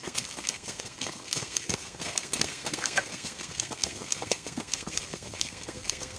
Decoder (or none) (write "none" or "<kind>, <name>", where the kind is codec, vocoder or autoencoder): codec, SNAC